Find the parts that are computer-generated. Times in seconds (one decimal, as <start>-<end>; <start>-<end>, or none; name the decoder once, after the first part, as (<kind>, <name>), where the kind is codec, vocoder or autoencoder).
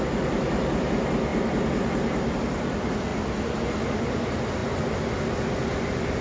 none